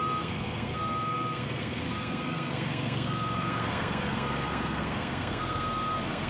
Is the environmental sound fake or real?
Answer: fake